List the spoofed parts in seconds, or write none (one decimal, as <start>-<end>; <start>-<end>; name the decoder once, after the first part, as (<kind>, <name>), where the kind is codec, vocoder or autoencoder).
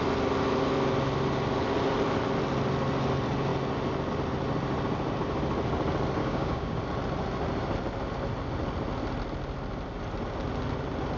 6.2-6.8 (codec, DAC)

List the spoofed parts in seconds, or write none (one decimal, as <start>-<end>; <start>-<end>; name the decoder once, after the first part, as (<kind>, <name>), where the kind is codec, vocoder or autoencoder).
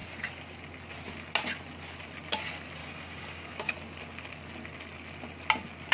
2.8-3.7 (codec, DAC)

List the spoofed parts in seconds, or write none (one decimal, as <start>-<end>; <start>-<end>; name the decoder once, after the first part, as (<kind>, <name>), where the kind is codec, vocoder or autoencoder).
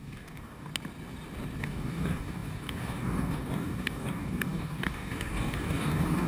0.0-0.7 (codec, DAC); 1.6-6.3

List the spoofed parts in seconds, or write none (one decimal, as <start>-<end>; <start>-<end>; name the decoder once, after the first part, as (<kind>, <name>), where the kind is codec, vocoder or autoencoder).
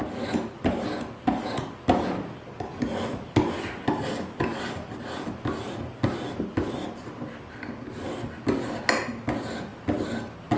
none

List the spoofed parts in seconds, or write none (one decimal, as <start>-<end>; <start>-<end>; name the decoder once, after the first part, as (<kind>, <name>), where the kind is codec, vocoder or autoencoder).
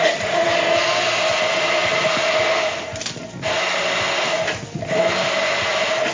none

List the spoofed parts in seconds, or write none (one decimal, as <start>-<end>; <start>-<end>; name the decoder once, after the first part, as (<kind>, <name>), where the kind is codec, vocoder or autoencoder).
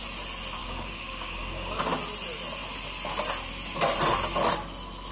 0.6-1.8 (codec, DAC)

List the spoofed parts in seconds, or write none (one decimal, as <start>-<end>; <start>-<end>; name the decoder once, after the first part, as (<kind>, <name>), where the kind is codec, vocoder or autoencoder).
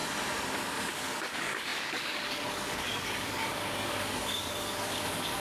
0.9-5.4 (codec, DAC)